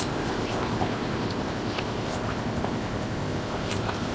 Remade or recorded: remade